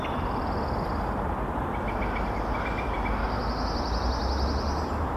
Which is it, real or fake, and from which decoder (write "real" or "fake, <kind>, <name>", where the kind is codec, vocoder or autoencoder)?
real